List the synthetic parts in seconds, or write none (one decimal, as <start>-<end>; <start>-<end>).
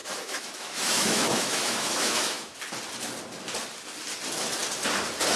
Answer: 0.0-2.6